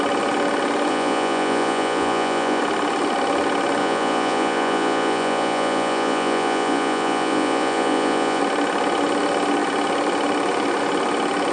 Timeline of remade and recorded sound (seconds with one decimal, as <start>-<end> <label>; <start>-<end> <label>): 0.0-0.9 recorded; 0.9-2.6 remade; 2.6-3.8 recorded; 3.8-8.4 remade; 8.4-11.5 recorded